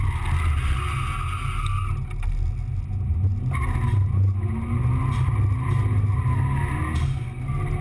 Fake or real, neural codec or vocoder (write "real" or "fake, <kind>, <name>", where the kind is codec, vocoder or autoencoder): real